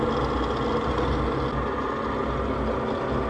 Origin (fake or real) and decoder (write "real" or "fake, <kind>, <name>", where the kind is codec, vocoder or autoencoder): real